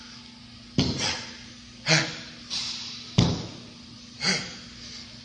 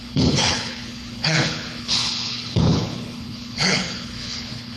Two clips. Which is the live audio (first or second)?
first